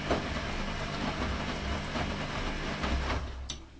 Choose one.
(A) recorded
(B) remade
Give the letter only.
A